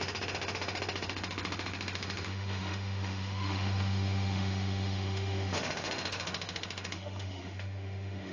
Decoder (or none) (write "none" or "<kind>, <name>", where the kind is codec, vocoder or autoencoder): autoencoder, DAC-VAE